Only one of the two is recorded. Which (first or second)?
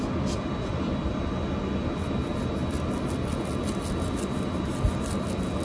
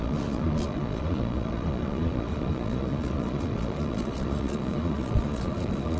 first